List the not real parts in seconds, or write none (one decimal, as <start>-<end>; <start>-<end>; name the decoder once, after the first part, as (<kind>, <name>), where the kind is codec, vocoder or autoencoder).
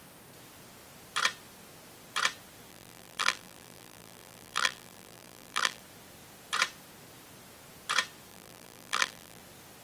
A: 2.7-5.8 (vocoder, BigVGAN v2); 8.3-9.4